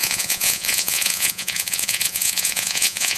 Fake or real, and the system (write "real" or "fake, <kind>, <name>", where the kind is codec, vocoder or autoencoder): fake, vocoder, Vocos